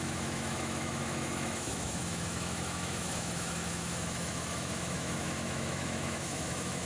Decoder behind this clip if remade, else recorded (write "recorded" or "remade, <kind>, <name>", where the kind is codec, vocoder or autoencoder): remade, autoencoder, DAC-VAE